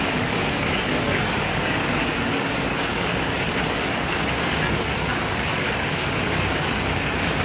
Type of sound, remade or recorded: remade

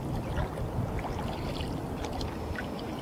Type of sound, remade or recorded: recorded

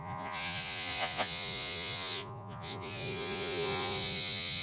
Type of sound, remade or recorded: remade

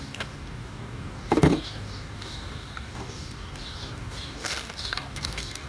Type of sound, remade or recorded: remade